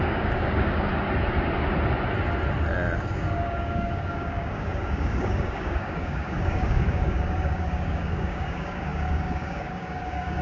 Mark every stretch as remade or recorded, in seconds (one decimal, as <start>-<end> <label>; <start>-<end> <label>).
0.0-0.9 remade; 0.9-3.0 recorded; 3.0-10.4 remade